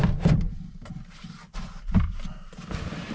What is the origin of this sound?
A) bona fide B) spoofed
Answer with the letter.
A